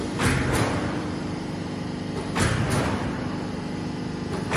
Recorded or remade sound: recorded